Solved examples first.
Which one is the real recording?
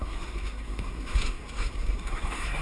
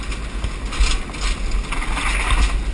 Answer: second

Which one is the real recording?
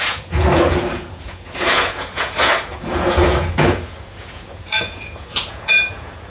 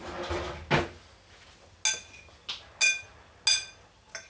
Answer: second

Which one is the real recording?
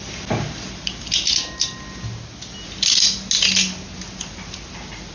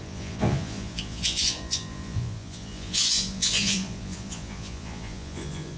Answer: first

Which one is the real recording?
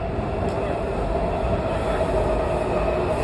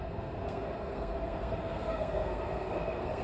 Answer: first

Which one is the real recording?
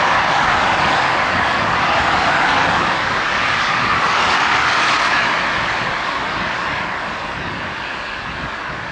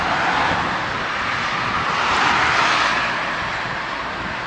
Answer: second